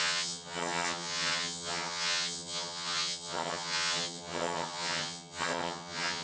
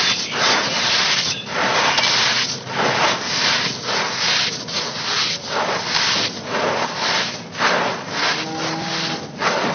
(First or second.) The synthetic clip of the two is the first